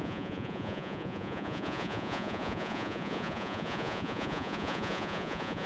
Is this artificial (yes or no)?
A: yes